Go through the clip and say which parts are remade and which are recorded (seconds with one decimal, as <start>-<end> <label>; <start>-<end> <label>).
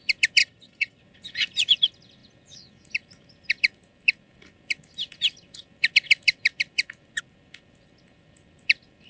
0.0-0.4 recorded; 0.4-1.0 remade; 1.0-9.1 recorded